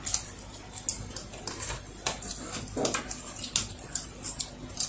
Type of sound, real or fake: real